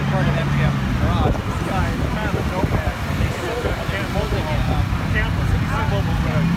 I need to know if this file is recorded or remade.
recorded